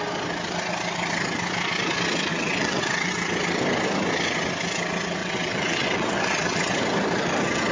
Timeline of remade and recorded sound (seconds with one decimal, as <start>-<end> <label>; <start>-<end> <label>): 0.0-2.3 recorded; 2.3-3.1 remade; 3.1-5.2 recorded; 5.2-6.8 remade; 6.8-7.7 recorded